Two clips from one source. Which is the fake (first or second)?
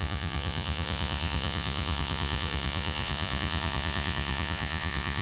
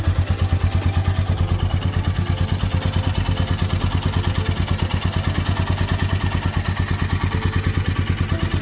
first